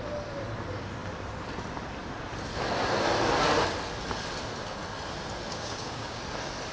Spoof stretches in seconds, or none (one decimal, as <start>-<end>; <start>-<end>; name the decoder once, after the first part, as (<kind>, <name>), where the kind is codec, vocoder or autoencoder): 5.5-6.2 (codec, DAC)